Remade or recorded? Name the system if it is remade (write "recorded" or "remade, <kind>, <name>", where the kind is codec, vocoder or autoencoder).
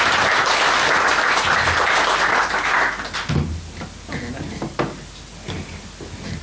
recorded